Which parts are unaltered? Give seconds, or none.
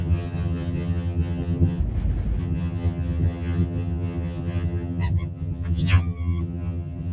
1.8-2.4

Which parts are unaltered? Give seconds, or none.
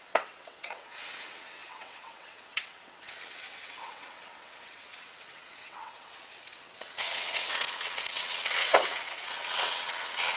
none